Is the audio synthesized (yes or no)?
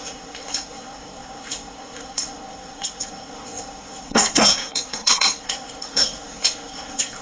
yes